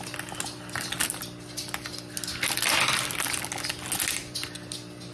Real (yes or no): yes